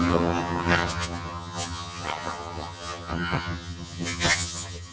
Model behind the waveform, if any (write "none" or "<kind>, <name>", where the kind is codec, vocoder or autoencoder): vocoder, HiFi-GAN